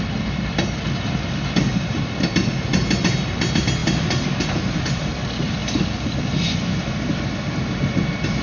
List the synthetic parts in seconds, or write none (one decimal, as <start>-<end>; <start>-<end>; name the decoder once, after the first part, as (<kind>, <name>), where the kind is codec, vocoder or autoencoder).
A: none

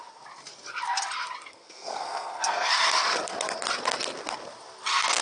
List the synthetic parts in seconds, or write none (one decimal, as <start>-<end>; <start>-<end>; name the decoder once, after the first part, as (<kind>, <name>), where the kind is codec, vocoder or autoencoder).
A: 1.5-2.7 (codec, SNAC)

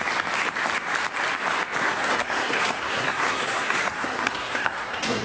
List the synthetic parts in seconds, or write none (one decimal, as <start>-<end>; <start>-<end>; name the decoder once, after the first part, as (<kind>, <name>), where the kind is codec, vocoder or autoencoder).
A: 1.8-5.2 (codec, SNAC)

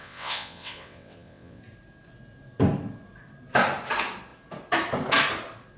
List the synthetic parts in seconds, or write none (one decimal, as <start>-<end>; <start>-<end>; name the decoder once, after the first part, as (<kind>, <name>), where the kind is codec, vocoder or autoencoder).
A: 0.0-1.6 (vocoder, WaveNeXt)

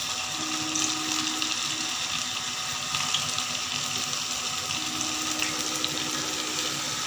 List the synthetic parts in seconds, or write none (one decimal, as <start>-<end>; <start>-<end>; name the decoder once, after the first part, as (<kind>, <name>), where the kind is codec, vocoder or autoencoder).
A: none

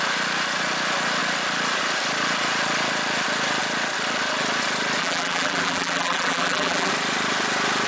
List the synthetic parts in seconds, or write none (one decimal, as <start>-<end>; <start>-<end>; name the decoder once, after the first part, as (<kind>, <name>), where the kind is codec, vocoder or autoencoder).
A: 5.0-6.9 (vocoder, BigVGAN v2)